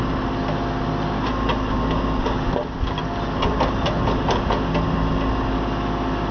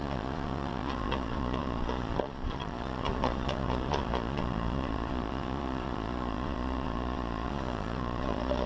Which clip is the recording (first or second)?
first